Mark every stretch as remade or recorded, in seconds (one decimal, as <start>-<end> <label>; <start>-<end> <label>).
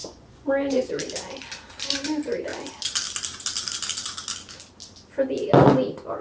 0.0-0.9 remade; 0.9-6.2 recorded